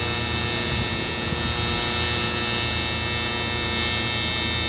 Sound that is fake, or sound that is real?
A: real